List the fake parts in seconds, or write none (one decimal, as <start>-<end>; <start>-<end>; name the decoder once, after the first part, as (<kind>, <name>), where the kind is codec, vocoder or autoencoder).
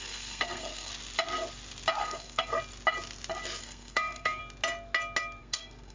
0.0-0.9 (codec, SNAC); 2.0-2.5; 3.6-4.4; 5.4-5.9